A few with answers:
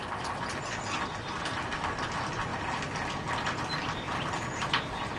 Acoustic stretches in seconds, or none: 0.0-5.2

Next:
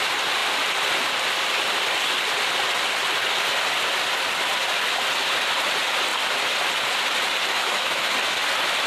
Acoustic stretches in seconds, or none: 0.0-7.5; 8.1-8.9

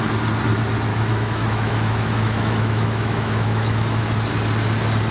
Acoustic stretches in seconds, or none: 0.0-0.9; 4.0-5.1

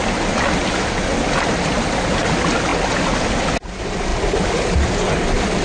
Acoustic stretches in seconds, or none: 0.0-5.6

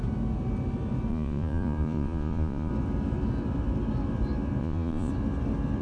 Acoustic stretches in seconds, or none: 0.0-1.1; 2.7-4.6; 5.1-5.8